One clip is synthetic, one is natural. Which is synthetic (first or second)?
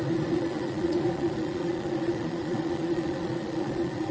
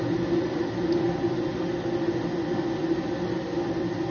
first